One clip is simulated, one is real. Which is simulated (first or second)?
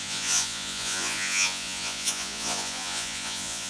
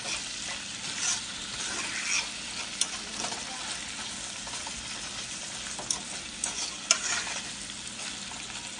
first